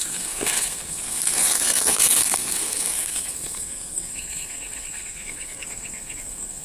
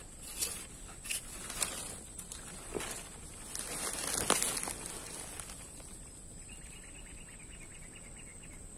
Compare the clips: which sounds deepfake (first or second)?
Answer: first